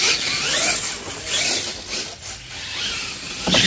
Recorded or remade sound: recorded